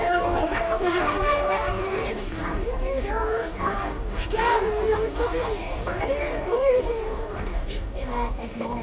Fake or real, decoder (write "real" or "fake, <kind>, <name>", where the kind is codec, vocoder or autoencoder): fake, codec, DAC